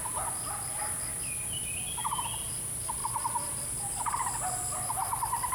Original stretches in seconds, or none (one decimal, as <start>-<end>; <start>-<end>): 0.0-2.0; 2.5-3.0; 3.8-5.5